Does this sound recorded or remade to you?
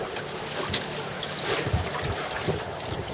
recorded